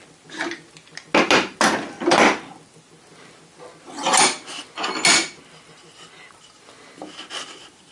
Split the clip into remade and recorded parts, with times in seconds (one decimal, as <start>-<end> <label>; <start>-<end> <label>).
0.0-7.9 recorded